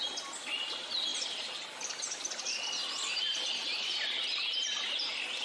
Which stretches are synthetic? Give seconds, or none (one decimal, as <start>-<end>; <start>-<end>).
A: 1.1-2.9